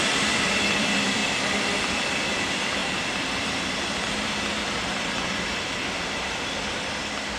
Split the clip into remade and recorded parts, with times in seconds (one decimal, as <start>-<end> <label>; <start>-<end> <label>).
0.0-1.2 remade; 1.2-1.9 recorded; 1.9-7.4 remade